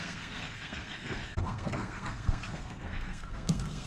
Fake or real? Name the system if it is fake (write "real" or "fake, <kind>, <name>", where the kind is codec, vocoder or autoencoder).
fake, codec, SNAC